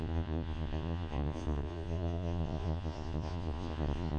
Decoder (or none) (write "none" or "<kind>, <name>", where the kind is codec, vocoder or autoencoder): vocoder, Vocos